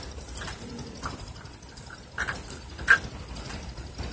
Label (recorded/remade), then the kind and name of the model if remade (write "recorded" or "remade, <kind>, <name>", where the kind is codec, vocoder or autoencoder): recorded